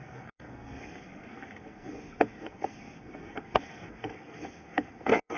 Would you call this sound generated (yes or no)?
yes